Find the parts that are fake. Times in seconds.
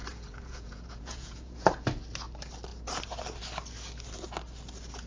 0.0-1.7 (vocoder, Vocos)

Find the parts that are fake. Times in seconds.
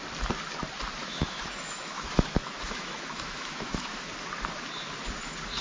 1.0-4.1 (autoencoder, DAC-VAE)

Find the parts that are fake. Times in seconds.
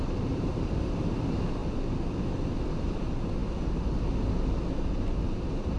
0.0-1.6 (vocoder, BigVGAN v2); 3.0-3.4; 4.9-5.8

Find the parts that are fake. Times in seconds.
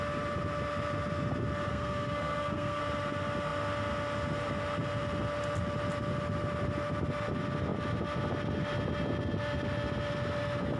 1.7-2.8 (codec, SNAC)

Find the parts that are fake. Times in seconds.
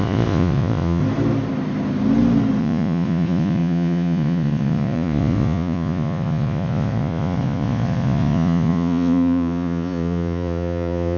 0.0-1.0 (vocoder, Vocos); 2.6-11.2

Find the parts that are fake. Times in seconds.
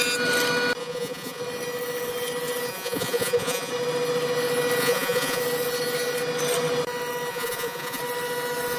0.8-1.4 (vocoder, Vocos); 2.7-3.7; 4.8-5.4; 7.3-8.0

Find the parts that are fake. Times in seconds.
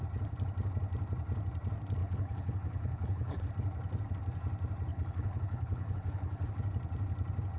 2.0-3.5 (codec, HILCodec); 4.9-6.5